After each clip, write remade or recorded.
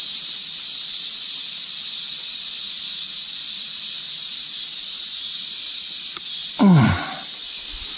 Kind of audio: recorded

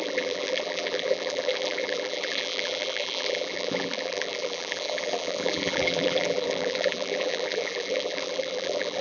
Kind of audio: remade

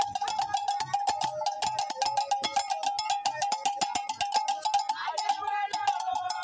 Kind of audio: recorded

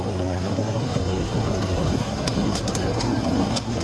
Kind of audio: remade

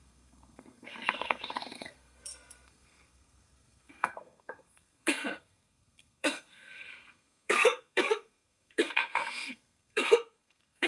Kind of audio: remade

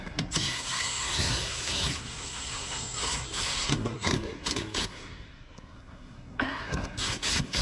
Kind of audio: remade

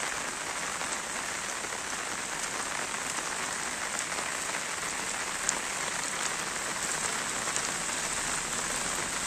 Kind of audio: recorded